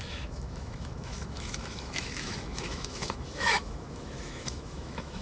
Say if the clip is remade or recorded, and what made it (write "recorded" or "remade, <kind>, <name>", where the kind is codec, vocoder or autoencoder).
remade, autoencoder, DAC-VAE